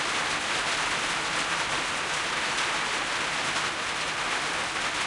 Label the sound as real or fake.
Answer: real